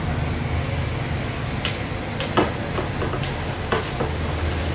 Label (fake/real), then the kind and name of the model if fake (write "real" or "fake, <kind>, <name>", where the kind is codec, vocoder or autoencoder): real